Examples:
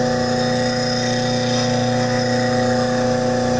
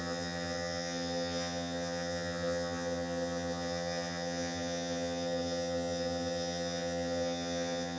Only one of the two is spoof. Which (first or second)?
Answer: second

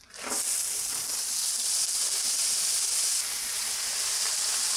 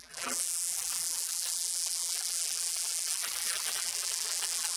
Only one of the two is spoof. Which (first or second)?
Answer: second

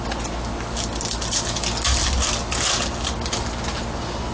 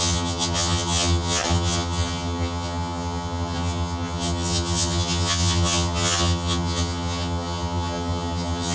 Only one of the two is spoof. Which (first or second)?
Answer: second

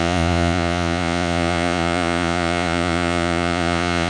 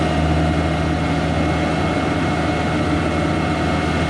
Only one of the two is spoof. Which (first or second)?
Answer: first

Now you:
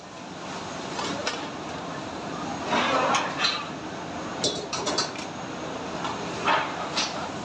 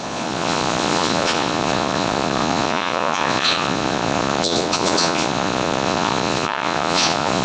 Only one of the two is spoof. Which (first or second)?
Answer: second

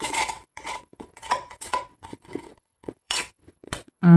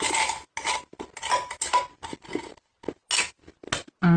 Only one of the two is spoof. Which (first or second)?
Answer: first